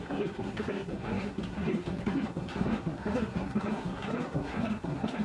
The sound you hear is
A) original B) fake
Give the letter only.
B